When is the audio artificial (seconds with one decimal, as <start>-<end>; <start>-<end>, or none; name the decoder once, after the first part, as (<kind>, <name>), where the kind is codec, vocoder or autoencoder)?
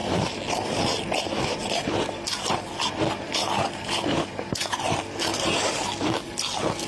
none